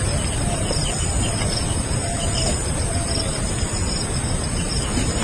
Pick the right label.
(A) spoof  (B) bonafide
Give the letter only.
B